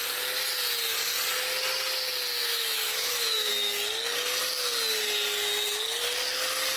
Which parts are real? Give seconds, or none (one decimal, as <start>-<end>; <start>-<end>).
0.0-2.4; 3.5-6.8